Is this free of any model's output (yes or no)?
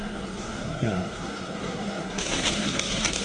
no